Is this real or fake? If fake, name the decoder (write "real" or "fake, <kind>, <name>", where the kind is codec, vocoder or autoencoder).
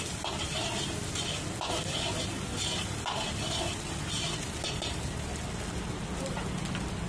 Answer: real